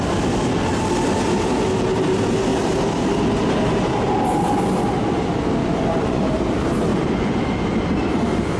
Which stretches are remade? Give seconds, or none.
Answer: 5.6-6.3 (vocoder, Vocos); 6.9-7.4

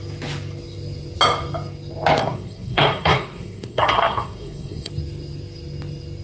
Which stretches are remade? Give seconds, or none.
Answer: 2.2-4.9 (codec, SNAC)